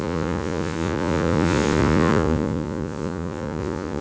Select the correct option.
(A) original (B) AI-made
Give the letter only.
B